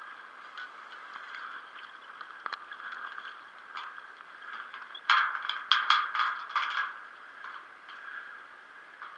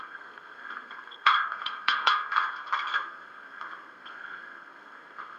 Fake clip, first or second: second